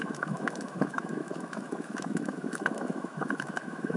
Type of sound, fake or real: fake